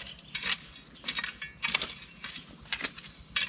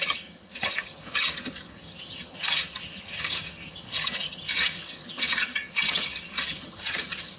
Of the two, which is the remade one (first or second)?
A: second